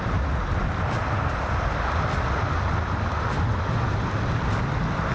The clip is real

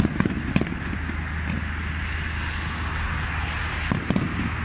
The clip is real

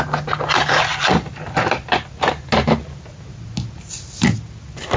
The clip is real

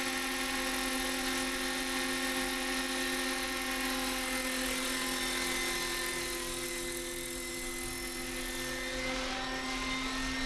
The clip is real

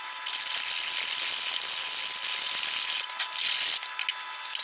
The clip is real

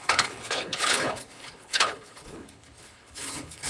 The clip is fake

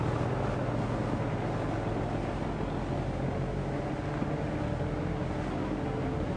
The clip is real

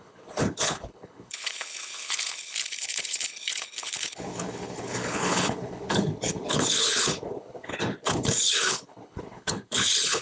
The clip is fake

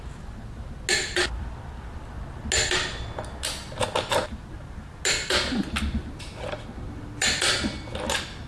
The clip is real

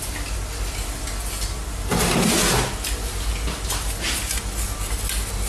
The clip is real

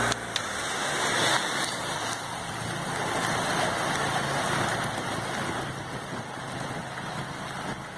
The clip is real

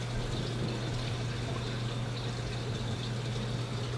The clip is real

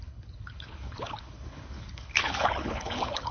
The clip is fake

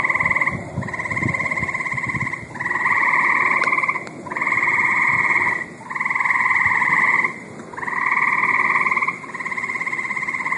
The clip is real